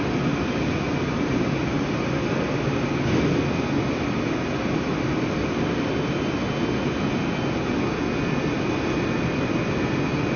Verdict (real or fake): real